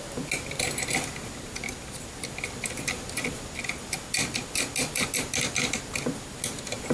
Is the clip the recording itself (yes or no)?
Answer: yes